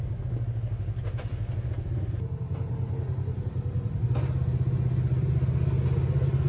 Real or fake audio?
real